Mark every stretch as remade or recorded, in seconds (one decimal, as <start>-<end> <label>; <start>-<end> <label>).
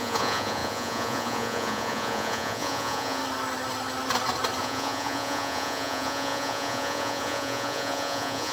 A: 0.0-3.2 remade; 3.2-4.6 recorded; 4.6-8.5 remade